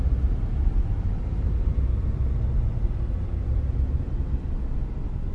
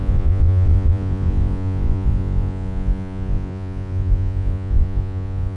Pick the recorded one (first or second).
first